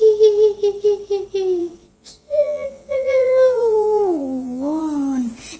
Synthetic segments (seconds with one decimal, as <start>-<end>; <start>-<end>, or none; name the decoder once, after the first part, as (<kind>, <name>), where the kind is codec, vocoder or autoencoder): 1.6-4.8 (vocoder, Vocos)